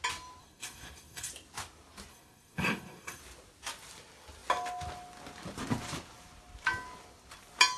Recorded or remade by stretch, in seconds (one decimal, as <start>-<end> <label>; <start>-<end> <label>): 0.0-0.4 recorded; 0.4-1.3 remade; 1.3-2.1 recorded; 2.1-3.2 remade; 3.2-7.8 recorded